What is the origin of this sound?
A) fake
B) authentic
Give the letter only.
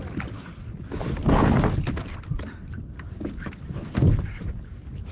B